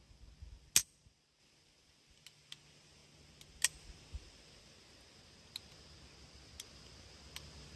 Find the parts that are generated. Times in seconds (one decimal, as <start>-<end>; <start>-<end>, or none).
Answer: none